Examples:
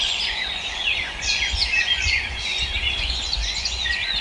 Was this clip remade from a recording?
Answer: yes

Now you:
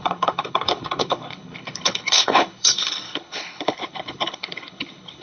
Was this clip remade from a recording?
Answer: yes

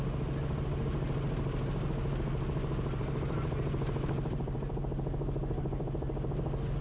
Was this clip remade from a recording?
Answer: no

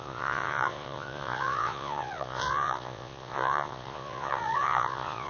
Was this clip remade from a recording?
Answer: yes